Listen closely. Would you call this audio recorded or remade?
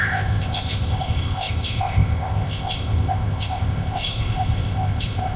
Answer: remade